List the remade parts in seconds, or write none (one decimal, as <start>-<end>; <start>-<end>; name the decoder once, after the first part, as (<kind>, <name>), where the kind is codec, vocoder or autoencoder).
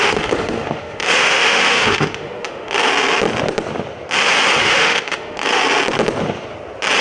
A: 0.0-2.9 (autoencoder, DAC-VAE); 4.6-5.6